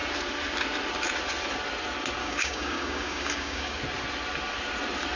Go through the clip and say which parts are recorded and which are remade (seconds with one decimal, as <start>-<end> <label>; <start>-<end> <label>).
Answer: 0.0-2.2 recorded; 2.2-3.8 remade; 3.8-5.2 recorded

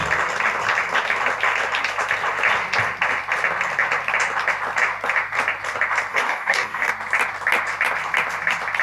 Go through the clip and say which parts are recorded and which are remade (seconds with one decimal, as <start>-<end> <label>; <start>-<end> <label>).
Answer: 0.0-6.1 recorded; 6.1-6.9 remade; 6.9-8.8 recorded

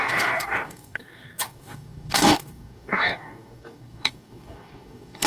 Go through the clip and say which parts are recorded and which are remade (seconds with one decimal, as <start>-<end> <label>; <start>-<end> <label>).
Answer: 0.0-5.3 remade

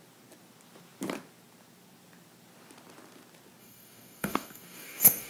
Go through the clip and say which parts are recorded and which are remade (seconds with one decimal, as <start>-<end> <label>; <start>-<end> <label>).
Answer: 0.0-3.6 recorded; 3.6-5.3 remade

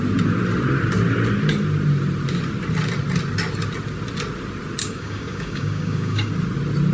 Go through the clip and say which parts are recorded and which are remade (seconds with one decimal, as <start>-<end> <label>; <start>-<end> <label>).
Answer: 0.0-4.8 recorded; 4.8-6.3 remade; 6.3-6.9 recorded

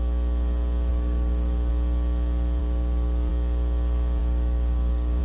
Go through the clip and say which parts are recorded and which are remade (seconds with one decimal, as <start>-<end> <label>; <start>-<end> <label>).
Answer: 0.0-0.9 recorded; 0.9-1.7 remade; 1.7-2.6 recorded; 2.6-3.3 remade; 3.3-4.2 recorded; 4.2-5.2 remade

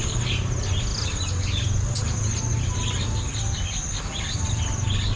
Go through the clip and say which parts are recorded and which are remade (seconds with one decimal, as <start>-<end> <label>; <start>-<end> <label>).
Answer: 0.0-5.2 recorded

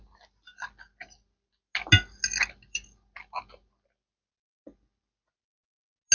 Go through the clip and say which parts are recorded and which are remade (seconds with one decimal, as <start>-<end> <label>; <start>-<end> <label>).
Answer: 0.0-6.1 recorded